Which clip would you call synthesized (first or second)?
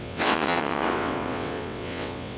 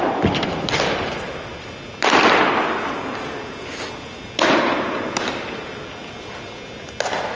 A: first